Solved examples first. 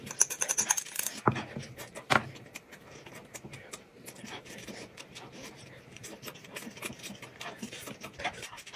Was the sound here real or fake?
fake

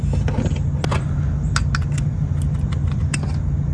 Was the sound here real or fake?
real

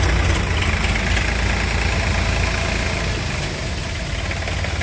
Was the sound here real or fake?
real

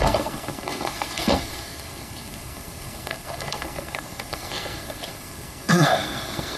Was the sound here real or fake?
fake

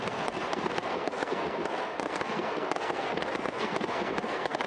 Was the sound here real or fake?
fake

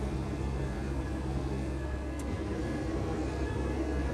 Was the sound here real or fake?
fake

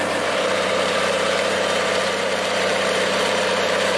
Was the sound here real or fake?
fake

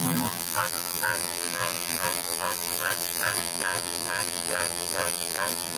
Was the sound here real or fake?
fake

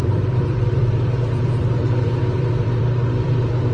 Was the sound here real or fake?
fake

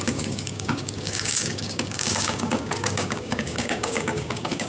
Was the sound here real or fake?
fake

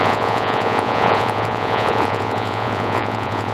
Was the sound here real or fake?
fake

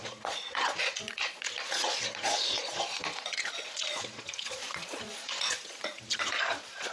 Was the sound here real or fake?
fake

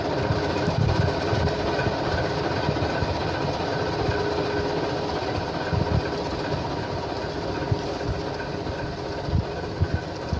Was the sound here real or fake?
real